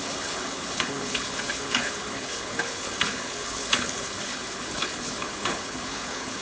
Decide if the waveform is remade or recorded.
remade